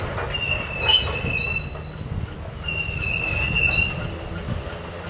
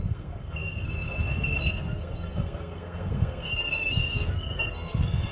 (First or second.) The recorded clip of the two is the first